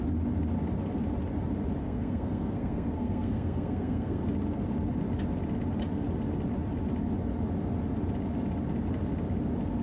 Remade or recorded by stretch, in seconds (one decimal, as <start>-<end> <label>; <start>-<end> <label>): 0.0-1.8 recorded; 1.8-4.2 remade; 4.2-9.8 recorded